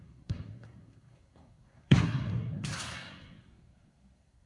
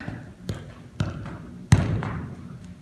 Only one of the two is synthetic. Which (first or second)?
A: first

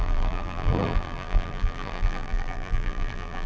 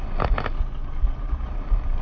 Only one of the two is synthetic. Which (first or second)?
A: first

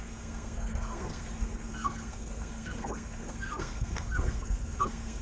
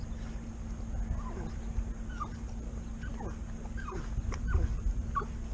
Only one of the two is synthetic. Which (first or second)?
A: first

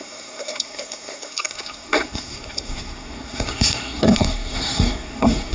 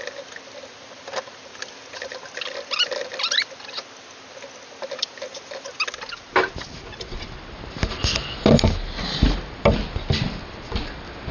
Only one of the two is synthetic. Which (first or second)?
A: first